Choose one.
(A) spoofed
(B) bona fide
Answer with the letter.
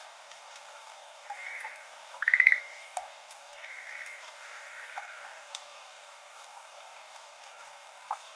A